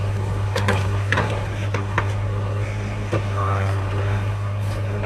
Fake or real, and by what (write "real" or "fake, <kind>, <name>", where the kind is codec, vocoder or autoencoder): fake, codec, SNAC